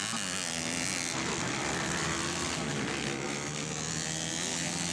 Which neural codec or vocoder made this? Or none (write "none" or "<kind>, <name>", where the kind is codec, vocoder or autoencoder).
none